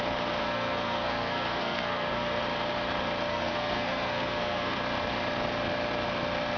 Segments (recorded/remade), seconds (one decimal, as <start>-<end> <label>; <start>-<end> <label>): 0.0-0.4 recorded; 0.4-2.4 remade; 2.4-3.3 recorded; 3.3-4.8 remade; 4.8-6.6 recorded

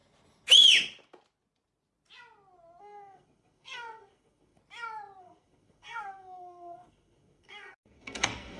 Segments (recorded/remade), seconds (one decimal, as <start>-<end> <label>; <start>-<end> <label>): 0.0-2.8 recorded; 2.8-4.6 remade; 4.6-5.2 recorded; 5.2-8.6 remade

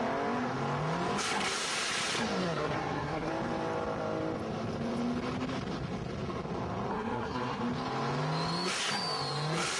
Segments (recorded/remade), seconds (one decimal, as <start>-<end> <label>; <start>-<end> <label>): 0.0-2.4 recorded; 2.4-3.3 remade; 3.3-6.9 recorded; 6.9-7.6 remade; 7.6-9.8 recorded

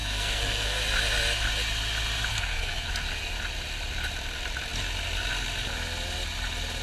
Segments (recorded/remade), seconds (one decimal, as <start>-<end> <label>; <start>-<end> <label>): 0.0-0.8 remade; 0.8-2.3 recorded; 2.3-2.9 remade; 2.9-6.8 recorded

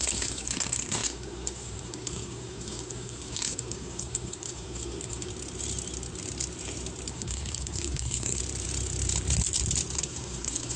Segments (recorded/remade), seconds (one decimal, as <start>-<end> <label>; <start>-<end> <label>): 0.0-5.3 remade; 5.3-7.1 recorded; 7.1-8.4 remade; 8.4-10.0 recorded; 10.0-10.8 remade

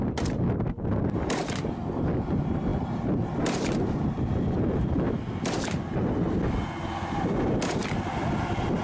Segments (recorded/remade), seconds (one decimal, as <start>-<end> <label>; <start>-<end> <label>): 0.0-8.8 recorded